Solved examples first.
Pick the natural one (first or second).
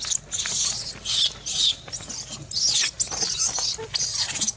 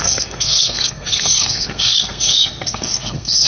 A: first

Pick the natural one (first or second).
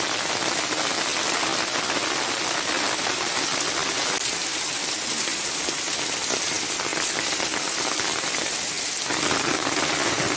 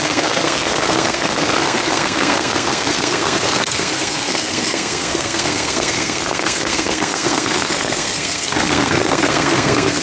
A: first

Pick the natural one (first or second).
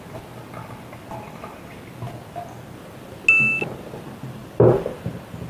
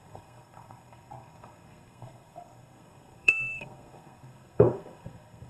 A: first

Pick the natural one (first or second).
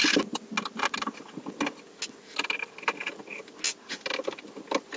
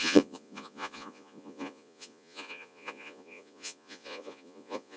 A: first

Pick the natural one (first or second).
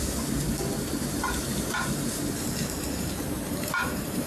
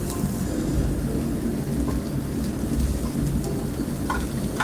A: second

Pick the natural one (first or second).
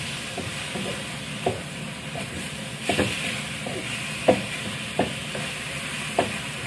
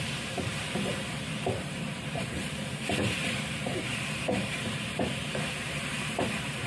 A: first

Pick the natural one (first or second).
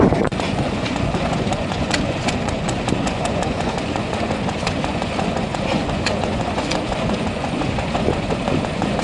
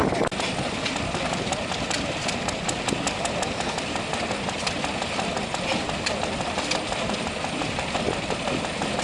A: second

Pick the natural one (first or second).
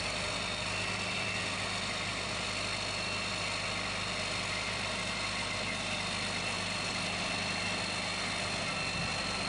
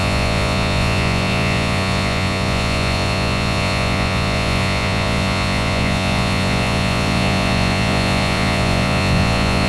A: first